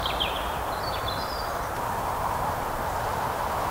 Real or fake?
fake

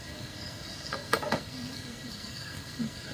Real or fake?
fake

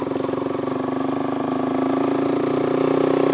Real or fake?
real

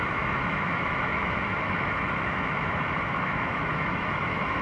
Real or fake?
fake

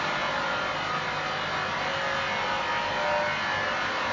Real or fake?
real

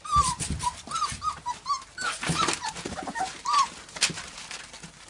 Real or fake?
real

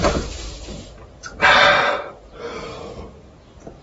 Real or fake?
real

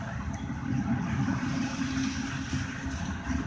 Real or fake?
real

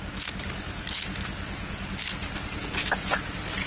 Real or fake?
real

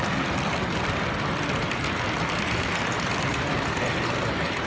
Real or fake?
fake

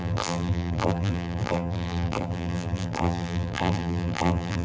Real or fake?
fake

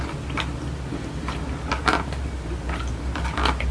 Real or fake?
real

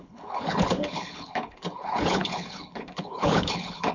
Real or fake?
fake